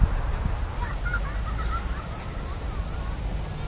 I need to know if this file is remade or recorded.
recorded